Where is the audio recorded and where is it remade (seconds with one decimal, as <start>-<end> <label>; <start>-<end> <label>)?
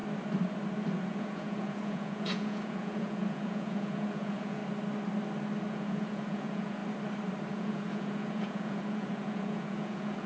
0.0-1.1 recorded; 1.1-4.6 remade; 4.6-5.7 recorded; 5.7-6.8 remade; 6.8-7.5 recorded; 7.5-10.3 remade